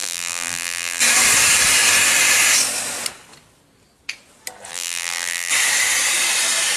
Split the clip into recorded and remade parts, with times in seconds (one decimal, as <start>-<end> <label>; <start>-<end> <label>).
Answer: 0.0-1.0 remade; 1.0-4.7 recorded; 4.7-5.5 remade; 5.5-6.8 recorded